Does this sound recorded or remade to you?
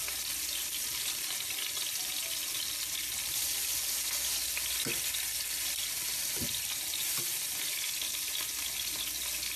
recorded